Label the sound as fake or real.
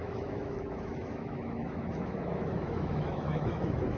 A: fake